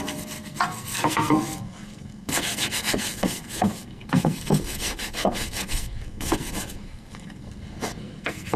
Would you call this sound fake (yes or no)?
yes